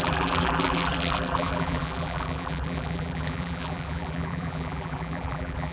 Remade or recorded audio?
remade